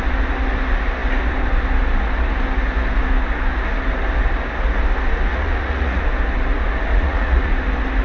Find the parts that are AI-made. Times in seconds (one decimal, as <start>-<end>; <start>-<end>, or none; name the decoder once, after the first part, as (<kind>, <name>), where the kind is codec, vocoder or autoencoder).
5.3-6.0 (vocoder, Vocos); 6.9-7.5